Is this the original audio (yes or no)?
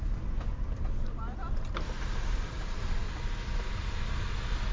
yes